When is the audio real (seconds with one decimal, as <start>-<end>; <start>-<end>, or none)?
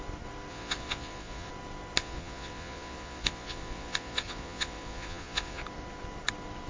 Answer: 0.0-0.5; 1.5-2.0; 5.6-6.7